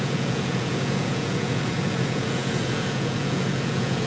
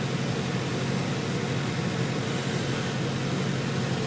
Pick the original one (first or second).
second